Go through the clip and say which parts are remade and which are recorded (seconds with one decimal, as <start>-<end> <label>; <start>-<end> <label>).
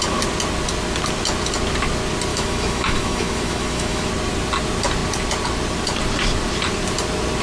0.0-2.3 recorded; 2.3-4.1 remade; 4.1-7.4 recorded